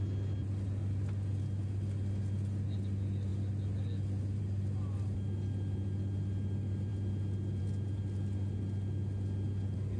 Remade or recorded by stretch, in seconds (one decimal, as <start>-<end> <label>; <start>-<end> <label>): 0.0-10.0 recorded

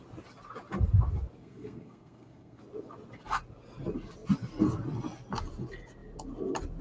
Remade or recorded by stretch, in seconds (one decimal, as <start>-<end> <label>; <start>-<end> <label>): 0.0-1.4 recorded; 1.4-2.6 remade; 2.6-6.8 recorded

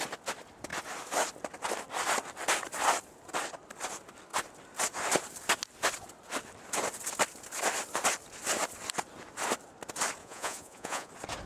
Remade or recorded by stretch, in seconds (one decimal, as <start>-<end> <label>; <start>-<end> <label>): 0.0-10.2 recorded; 10.2-11.1 remade; 11.1-11.5 recorded

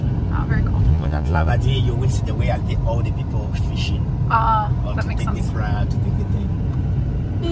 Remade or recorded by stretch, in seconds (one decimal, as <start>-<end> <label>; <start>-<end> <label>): 0.0-0.9 recorded; 0.9-1.5 remade; 1.5-7.5 recorded

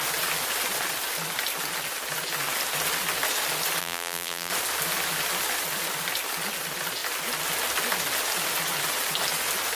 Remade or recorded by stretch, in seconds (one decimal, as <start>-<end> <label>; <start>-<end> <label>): 0.0-3.8 recorded; 3.8-4.5 remade; 4.5-9.7 recorded

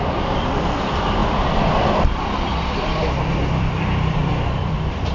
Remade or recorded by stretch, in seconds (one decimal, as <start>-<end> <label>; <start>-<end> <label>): 0.0-5.1 remade